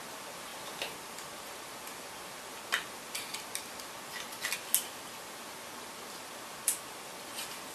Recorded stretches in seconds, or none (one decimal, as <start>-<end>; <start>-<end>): 0.0-7.7